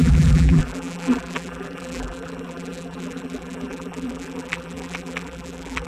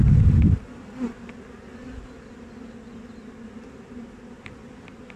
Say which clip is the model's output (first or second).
first